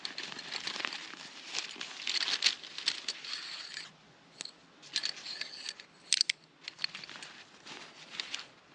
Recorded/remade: recorded